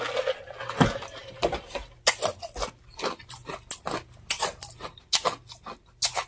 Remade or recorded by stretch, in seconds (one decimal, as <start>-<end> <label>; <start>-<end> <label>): 0.0-6.3 recorded